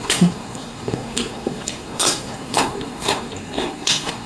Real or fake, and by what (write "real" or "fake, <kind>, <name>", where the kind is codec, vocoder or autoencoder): fake, codec, SNAC